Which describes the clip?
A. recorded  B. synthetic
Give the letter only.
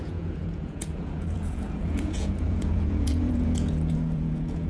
B